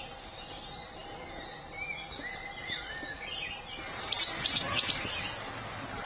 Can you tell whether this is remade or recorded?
recorded